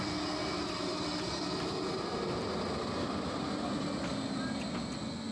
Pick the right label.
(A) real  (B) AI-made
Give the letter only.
A